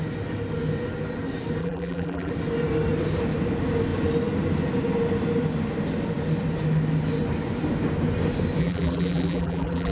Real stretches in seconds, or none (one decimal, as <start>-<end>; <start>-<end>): 0.0-1.6; 2.3-8.6